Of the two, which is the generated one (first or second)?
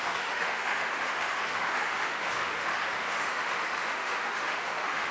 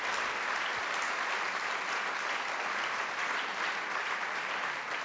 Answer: first